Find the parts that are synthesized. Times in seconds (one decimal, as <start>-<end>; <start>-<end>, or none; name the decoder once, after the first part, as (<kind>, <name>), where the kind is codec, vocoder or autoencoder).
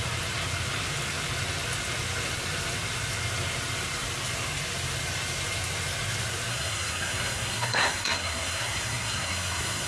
6.5-9.9 (codec, SNAC)